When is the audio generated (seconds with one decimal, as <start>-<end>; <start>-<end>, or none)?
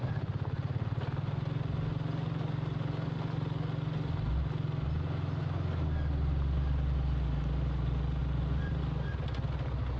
8.2-8.8